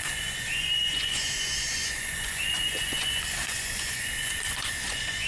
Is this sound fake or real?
fake